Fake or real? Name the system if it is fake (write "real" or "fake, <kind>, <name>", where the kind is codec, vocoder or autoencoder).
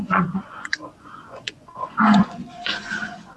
fake, vocoder, Vocos